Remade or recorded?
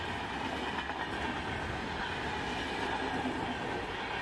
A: recorded